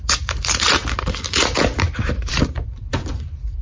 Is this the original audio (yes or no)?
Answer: no